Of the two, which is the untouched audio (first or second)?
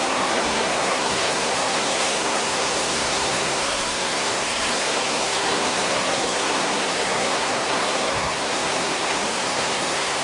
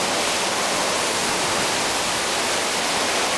second